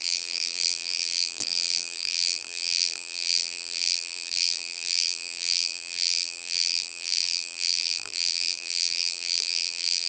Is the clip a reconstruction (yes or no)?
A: yes